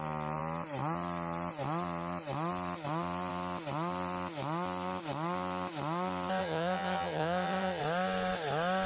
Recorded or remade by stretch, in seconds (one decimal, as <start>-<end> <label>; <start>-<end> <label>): 0.0-6.4 recorded; 6.4-7.8 remade; 7.8-8.9 recorded